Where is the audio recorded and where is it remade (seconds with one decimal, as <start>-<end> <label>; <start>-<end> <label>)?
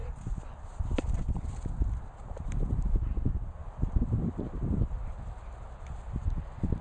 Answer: 0.0-6.8 recorded